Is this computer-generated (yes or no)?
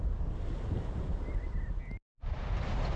no